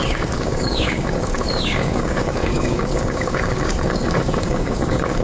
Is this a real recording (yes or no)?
no